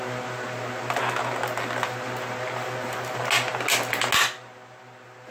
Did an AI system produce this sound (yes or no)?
no